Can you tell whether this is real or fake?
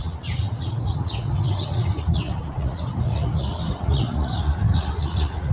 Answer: fake